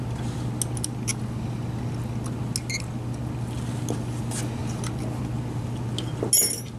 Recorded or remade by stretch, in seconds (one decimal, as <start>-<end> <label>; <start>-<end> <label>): 0.0-6.8 recorded